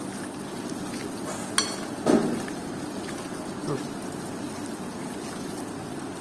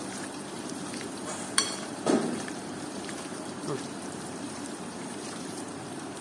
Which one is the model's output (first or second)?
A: second